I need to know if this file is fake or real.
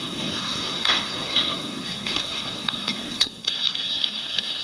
fake